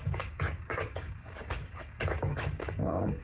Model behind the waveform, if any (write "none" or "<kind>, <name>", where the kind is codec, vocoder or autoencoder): codec, DAC